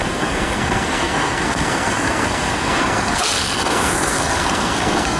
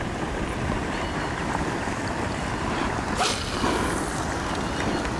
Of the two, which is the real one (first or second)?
second